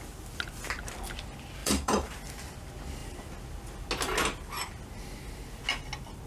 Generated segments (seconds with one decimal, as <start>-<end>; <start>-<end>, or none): 1.6-2.1